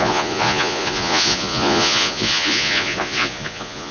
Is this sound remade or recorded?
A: remade